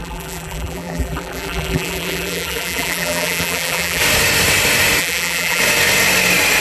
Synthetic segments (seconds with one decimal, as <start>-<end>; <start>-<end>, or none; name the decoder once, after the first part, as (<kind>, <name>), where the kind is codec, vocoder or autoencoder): 0.0-4.0 (vocoder, BigVGAN v2); 5.0-5.6